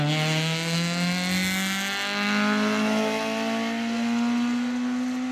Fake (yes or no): no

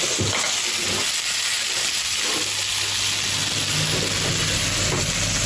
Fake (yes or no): no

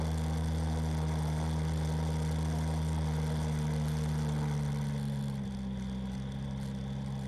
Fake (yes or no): no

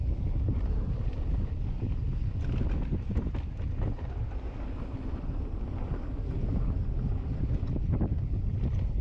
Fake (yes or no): no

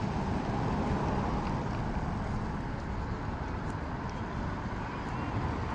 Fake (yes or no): no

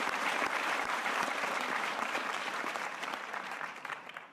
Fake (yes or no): yes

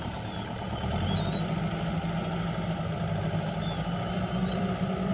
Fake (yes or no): no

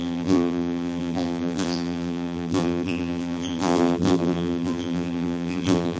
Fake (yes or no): yes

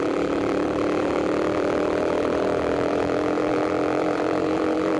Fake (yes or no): yes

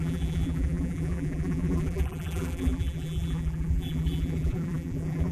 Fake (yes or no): yes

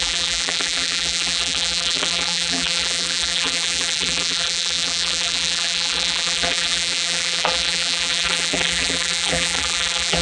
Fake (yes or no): yes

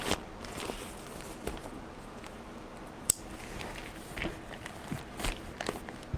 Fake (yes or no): no